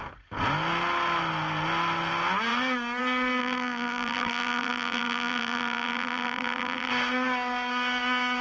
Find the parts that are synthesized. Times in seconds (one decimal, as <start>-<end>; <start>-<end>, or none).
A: 3.4-6.9

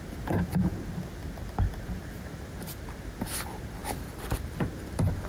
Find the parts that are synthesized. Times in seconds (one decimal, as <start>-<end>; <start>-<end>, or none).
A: 0.0-0.7; 2.2-5.3